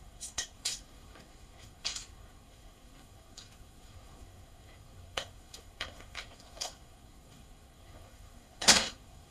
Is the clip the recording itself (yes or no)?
no